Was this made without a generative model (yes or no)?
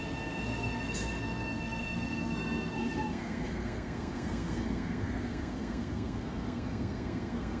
no